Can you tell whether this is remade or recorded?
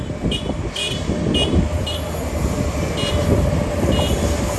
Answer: recorded